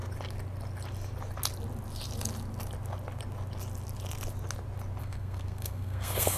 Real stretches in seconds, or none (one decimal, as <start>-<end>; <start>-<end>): 0.0-5.0